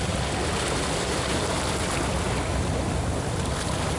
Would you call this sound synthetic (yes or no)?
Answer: no